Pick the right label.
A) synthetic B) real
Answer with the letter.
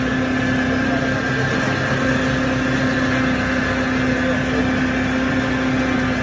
B